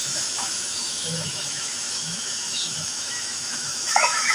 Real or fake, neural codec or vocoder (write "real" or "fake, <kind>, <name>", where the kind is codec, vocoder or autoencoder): fake, autoencoder, DAC-VAE